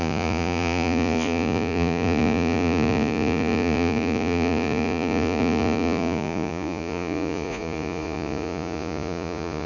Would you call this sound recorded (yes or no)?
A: no